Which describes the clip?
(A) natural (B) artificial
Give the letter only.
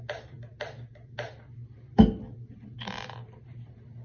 A